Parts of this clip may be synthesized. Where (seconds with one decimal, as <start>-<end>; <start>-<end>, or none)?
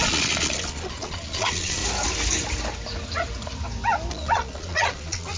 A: 0.0-1.8; 4.1-5.4